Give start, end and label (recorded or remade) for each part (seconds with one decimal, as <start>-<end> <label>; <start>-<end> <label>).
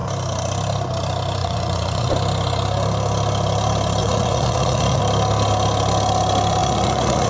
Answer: 0.0-1.4 recorded; 1.4-2.1 remade; 2.1-4.0 recorded; 4.0-5.0 remade; 5.0-6.6 recorded; 6.6-7.3 remade